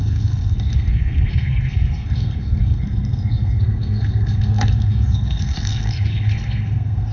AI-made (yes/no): yes